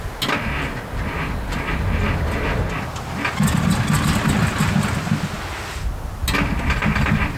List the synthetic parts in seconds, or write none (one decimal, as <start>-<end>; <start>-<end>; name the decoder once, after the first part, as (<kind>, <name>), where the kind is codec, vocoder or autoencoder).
6.8-7.4 (vocoder, BigVGAN v2)